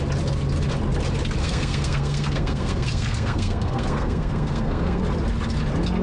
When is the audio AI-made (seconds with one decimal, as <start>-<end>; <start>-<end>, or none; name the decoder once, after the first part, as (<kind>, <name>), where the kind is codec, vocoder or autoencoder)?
1.4-5.0 (codec, SNAC)